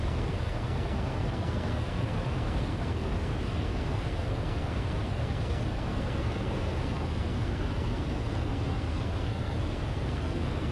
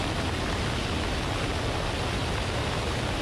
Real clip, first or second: second